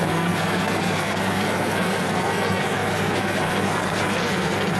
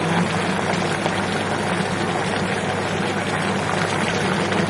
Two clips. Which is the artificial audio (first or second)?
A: first